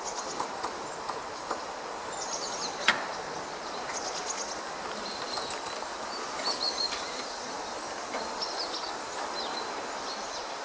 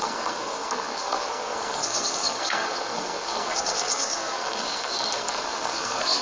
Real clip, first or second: first